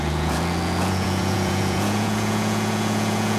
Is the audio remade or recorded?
remade